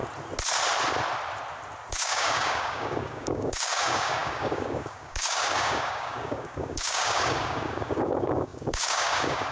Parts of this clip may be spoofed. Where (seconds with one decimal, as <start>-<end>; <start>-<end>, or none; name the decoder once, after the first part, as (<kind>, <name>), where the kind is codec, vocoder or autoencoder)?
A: 1.9-9.5 (codec, DAC)